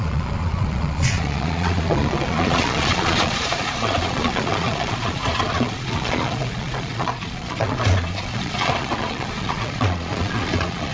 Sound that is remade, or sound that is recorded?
remade